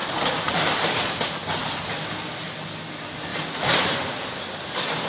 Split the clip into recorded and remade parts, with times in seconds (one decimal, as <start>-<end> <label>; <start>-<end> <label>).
0.0-1.2 remade; 1.2-3.3 recorded; 3.3-3.8 remade; 3.8-5.1 recorded